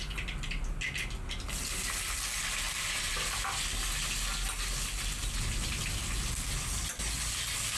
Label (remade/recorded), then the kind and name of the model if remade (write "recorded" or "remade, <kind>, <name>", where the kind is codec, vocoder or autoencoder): recorded